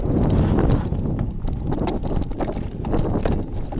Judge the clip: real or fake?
real